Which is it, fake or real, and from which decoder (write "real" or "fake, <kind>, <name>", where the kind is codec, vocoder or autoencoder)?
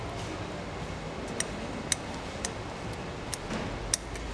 real